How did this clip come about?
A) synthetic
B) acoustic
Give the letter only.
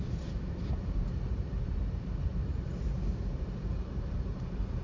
A